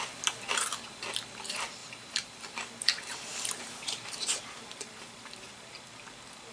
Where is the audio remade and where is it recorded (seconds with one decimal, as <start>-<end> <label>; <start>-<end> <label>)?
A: 0.0-1.8 recorded; 1.8-5.7 remade; 5.7-6.5 recorded

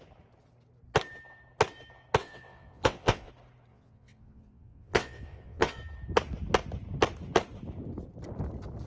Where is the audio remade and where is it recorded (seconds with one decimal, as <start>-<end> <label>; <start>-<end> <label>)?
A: 0.0-2.2 recorded; 2.2-3.3 remade; 3.3-3.7 recorded; 3.7-5.8 remade; 5.8-8.9 recorded